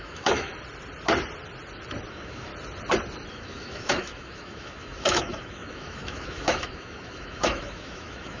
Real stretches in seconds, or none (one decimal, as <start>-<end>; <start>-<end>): 0.5-2.1; 2.5-3.3